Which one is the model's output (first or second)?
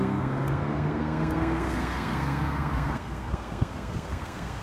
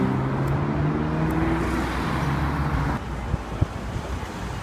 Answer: first